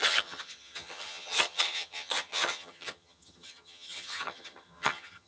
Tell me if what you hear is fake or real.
fake